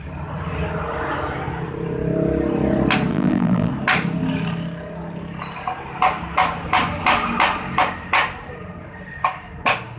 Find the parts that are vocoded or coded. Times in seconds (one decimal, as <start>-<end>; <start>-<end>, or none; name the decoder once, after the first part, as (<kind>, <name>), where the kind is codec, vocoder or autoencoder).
3.1-3.7 (vocoder, BigVGAN v2)